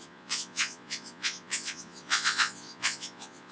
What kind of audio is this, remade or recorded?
remade